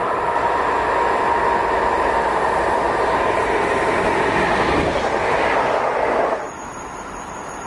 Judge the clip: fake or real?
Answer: real